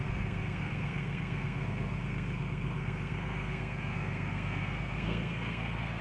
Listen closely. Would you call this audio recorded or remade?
remade